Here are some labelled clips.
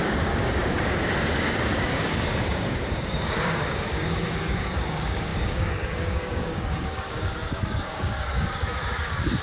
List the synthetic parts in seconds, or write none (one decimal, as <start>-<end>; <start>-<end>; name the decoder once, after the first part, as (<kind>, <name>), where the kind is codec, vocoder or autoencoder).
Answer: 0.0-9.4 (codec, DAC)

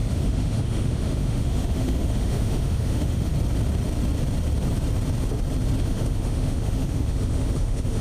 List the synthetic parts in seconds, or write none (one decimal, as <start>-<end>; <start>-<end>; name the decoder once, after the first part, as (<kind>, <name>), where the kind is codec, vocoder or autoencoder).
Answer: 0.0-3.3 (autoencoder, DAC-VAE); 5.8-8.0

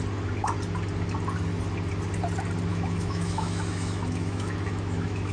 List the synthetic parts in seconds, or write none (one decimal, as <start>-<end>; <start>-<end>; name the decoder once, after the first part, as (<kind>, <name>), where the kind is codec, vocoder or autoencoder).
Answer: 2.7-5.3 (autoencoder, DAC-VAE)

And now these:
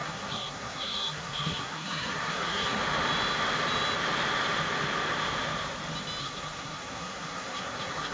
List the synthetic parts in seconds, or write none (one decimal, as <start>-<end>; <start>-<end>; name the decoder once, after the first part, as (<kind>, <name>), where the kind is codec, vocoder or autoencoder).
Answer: 0.0-2.8 (codec, SNAC); 6.2-8.1

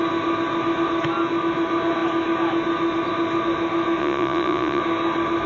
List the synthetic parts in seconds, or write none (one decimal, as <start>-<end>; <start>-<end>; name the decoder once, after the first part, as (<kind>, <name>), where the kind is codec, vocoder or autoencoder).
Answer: 4.0-4.8 (vocoder, Vocos)

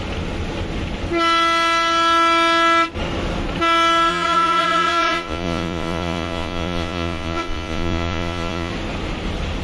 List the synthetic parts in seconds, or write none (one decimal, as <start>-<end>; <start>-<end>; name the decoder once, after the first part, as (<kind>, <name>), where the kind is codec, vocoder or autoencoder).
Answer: 4.1-8.7 (vocoder, Vocos)

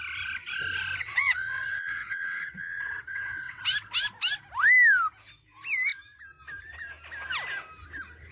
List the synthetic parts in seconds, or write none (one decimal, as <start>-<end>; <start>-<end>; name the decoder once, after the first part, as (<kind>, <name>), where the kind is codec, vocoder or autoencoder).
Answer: 1.0-3.6 (vocoder, WaveNeXt)